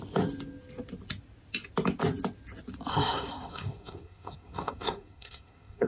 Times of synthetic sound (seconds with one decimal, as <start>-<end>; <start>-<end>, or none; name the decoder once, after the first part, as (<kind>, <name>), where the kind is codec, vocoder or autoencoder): 2.9-5.9 (codec, SNAC)